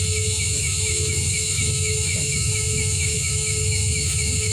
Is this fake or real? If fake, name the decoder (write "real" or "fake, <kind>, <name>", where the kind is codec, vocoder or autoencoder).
fake, autoencoder, DAC-VAE